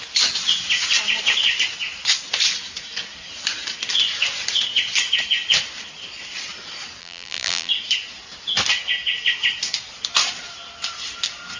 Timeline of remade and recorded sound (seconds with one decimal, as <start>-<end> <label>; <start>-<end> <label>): 0.0-7.0 recorded; 7.0-7.7 remade; 7.7-11.6 recorded